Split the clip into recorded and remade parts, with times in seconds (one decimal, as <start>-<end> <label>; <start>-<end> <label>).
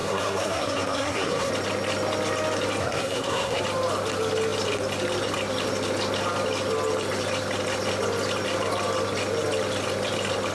0.0-1.5 remade; 1.5-2.8 recorded; 2.8-3.6 remade; 3.6-10.5 recorded